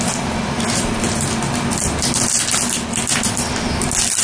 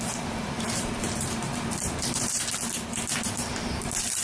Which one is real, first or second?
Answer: first